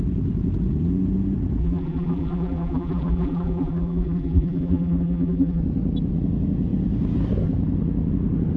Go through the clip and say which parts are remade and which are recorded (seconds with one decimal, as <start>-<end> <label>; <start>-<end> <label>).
0.0-1.6 recorded; 1.6-5.6 remade; 5.6-8.6 recorded